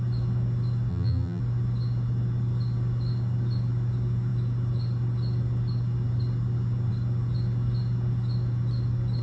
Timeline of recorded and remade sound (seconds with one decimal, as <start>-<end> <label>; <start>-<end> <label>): 0.0-0.9 recorded; 0.9-1.4 remade; 1.4-9.2 recorded